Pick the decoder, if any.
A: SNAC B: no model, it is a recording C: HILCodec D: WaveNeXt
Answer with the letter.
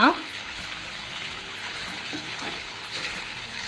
C